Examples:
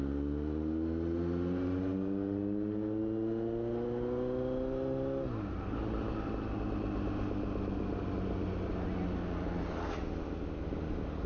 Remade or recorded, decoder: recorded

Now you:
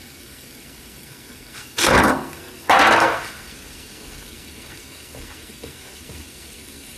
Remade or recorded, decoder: remade, codec, SNAC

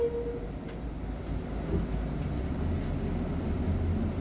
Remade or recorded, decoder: recorded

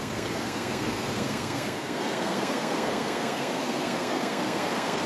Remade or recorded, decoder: remade, codec, SNAC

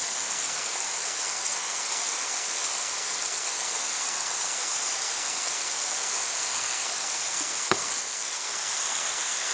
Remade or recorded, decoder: remade, codec, SNAC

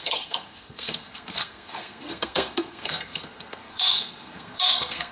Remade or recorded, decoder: remade, codec, SNAC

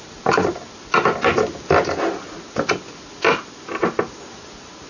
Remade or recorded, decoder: recorded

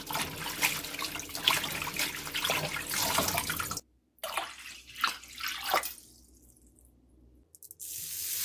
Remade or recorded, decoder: recorded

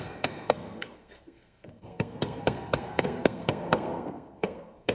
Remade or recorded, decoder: remade, codec, SNAC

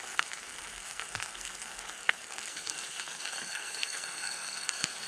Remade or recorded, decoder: remade, codec, SNAC